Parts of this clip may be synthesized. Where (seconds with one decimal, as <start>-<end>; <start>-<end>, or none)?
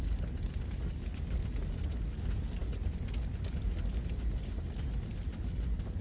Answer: none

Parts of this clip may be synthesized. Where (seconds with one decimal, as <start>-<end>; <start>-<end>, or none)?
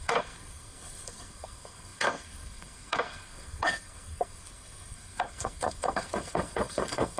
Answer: 0.0-7.2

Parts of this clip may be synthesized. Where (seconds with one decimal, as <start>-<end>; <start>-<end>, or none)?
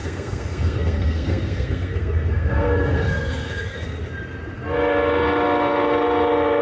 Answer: 0.0-4.0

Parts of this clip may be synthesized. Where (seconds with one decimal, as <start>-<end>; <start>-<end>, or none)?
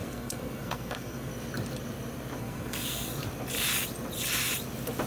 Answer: 0.0-1.3; 2.4-3.1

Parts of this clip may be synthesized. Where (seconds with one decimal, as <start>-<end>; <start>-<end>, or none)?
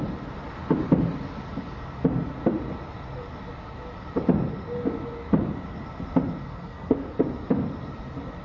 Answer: 6.4-7.2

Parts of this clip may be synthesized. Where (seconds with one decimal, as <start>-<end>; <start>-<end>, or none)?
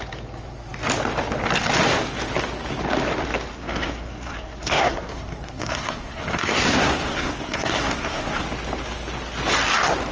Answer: 3.5-8.4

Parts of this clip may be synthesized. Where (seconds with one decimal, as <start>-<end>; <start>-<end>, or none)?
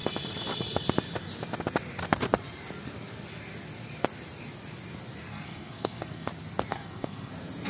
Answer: 5.3-6.3; 6.7-7.3